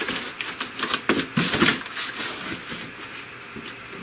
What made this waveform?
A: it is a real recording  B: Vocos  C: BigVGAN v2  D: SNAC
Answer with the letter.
A